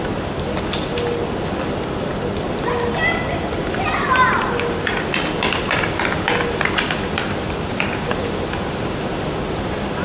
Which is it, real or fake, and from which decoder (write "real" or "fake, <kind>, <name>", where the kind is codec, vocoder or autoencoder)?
real